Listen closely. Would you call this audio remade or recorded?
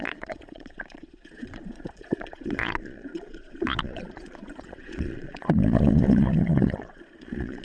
remade